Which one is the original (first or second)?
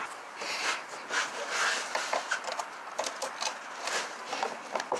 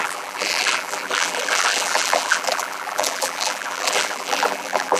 first